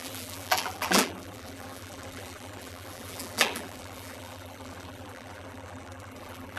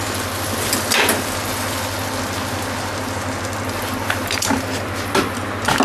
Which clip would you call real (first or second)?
second